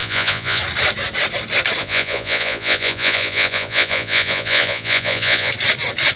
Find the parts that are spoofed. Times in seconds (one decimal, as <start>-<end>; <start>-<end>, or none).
0.0-0.6; 1.8-5.5